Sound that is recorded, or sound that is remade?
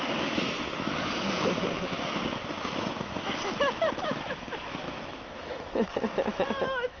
remade